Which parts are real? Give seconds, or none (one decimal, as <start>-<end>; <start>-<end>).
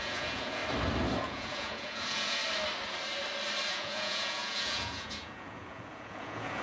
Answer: 0.6-1.2; 2.4-3.7